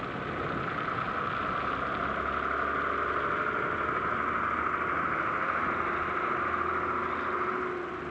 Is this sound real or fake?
real